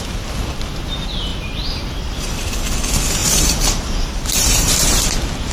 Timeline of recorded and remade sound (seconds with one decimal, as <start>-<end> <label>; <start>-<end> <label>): 0.0-1.3 recorded; 1.3-1.8 remade; 1.8-3.2 recorded; 3.2-5.1 remade; 5.1-5.5 recorded